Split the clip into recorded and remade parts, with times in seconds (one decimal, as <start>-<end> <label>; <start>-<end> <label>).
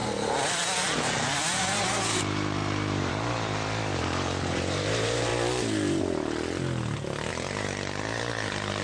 0.0-1.6 recorded; 1.6-5.3 remade; 5.3-7.3 recorded; 7.3-8.8 remade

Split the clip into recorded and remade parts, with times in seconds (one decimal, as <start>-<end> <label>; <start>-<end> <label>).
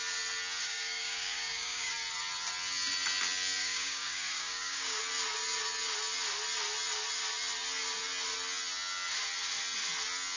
0.0-0.6 recorded; 0.6-1.9 remade; 1.9-3.6 recorded; 3.6-5.0 remade; 5.0-10.4 recorded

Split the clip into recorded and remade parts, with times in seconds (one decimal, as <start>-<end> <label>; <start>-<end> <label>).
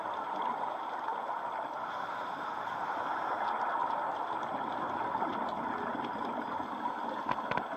0.0-1.8 recorded; 1.8-3.0 remade; 3.0-7.8 recorded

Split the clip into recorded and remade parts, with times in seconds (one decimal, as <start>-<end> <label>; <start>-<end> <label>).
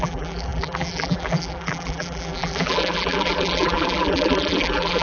0.0-5.0 remade